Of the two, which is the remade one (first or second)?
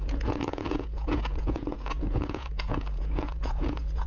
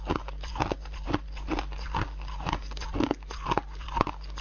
first